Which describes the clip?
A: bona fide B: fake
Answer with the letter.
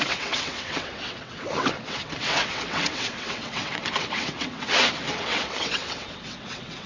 B